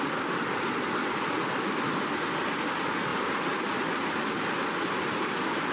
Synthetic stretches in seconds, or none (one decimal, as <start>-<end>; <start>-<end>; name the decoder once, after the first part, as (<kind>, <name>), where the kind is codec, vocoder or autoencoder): none